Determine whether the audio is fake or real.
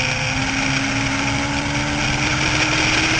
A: real